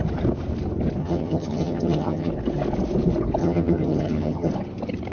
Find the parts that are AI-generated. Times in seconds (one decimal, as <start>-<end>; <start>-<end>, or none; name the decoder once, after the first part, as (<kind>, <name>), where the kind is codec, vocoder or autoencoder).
1.0-2.3 (vocoder, HiFi-GAN); 3.4-4.5